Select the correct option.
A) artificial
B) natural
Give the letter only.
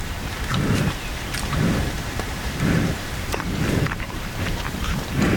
A